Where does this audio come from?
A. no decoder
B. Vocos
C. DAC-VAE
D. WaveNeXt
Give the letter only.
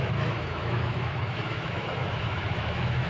C